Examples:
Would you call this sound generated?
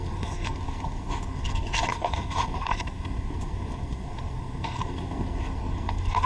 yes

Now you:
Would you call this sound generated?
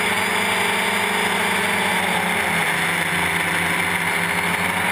no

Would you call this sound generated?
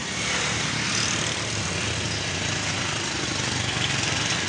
no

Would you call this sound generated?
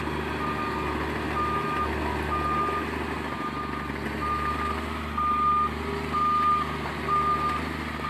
no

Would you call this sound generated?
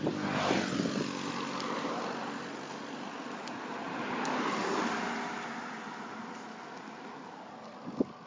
no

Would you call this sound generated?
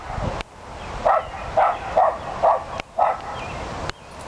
no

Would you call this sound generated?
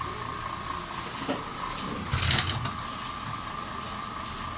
no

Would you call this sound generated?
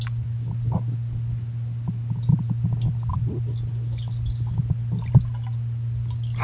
no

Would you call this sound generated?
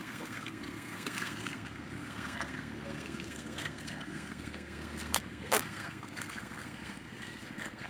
yes